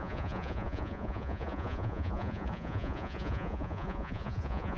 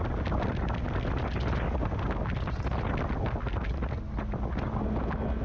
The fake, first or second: first